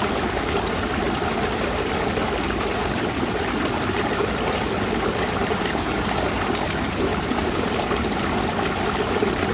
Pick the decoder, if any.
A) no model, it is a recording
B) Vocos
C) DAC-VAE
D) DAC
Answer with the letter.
A